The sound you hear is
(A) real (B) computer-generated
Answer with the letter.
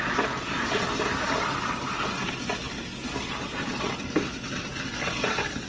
A